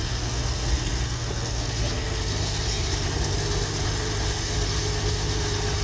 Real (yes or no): yes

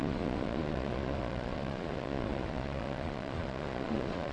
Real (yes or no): no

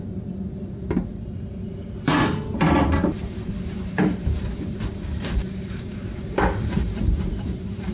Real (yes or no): no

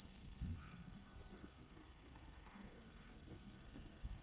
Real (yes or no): no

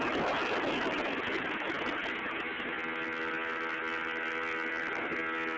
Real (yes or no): yes